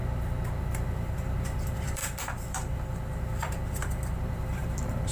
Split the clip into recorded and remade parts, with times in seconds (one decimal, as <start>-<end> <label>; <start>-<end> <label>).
0.0-0.6 recorded; 0.6-5.1 remade